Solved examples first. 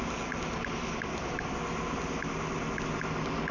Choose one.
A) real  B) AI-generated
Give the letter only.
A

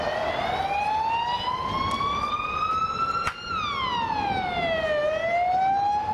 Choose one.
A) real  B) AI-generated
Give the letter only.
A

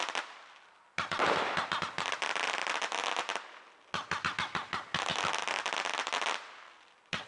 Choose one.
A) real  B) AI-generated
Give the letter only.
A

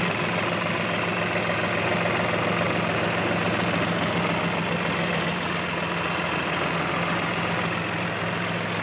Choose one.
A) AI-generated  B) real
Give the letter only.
B